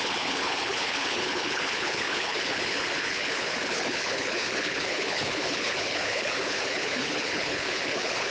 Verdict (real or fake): fake